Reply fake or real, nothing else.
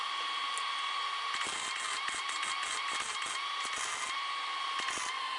real